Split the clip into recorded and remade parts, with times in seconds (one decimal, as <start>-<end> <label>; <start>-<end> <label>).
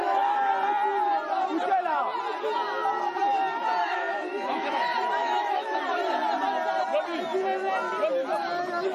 0.0-0.5 remade; 0.5-3.8 recorded; 3.8-4.8 remade; 4.8-5.2 recorded; 5.2-5.8 remade; 5.8-8.9 recorded